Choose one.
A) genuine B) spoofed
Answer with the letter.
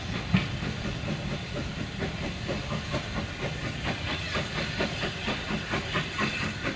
A